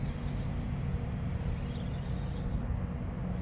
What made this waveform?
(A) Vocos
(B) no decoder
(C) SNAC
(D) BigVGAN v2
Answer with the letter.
B